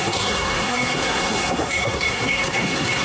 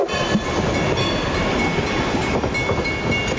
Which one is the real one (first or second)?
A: second